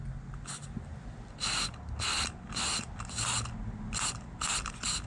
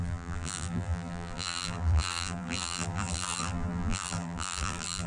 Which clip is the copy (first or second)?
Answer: second